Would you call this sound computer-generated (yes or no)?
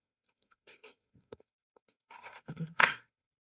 yes